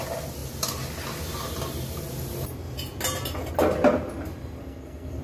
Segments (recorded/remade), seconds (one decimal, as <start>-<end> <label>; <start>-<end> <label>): 0.0-4.6 recorded; 4.6-5.2 remade